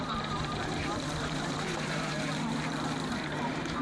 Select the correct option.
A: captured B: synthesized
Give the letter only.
B